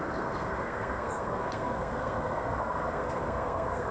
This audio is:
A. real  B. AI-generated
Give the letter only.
B